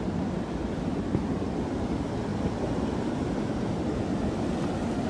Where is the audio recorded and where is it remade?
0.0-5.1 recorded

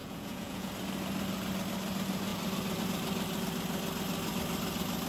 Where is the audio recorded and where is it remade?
0.0-0.7 remade; 0.7-5.1 recorded

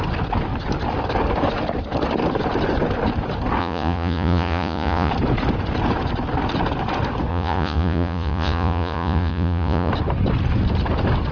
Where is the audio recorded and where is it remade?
0.0-3.6 recorded; 3.6-5.1 remade; 5.1-7.3 recorded; 7.3-9.9 remade; 9.9-11.3 recorded

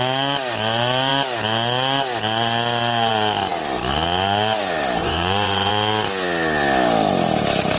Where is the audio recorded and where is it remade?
0.0-5.0 recorded; 5.0-5.7 remade; 5.7-7.8 recorded